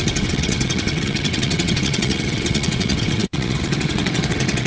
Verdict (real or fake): fake